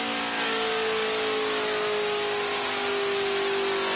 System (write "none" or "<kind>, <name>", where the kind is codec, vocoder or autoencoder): none